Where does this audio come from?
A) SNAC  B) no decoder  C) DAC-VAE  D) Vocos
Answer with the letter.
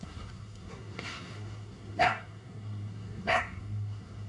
A